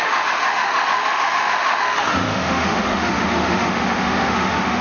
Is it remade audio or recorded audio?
remade